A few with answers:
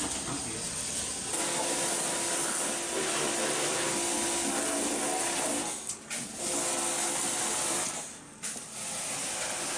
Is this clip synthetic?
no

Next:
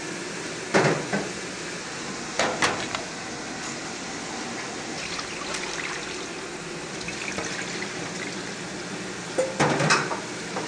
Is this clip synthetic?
no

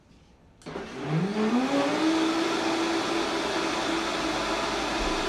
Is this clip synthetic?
no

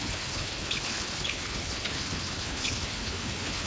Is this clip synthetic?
yes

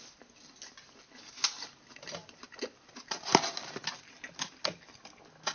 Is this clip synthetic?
no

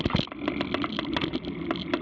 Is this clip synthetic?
no